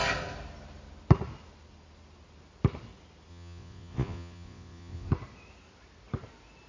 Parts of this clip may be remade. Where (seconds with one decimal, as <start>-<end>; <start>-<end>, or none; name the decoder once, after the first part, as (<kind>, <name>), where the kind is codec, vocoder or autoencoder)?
3.3-5.1 (vocoder, Vocos)